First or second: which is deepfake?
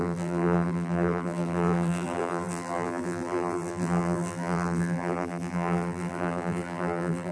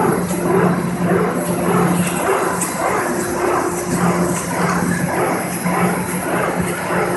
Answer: first